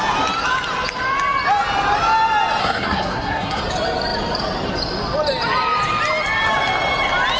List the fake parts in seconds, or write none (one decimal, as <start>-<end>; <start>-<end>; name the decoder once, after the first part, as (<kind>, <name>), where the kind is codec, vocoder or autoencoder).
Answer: 2.6-3.6 (codec, SNAC)